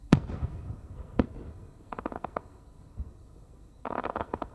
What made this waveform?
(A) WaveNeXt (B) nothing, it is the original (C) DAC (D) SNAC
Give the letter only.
D